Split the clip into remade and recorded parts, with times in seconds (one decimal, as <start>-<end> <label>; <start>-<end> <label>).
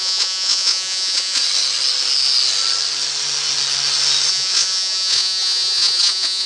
0.0-1.4 remade; 1.4-4.3 recorded; 4.3-6.5 remade